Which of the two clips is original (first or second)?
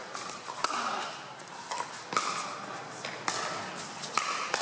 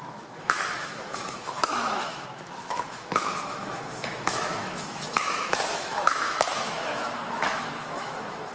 first